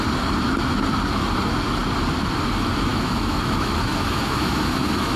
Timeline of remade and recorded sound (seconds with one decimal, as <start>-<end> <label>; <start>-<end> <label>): 0.0-2.9 recorded; 2.9-5.2 remade